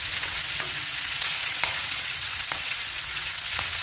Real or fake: fake